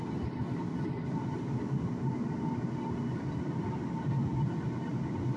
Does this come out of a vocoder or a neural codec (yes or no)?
no